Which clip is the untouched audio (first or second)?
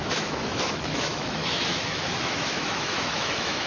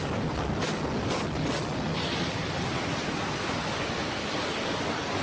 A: second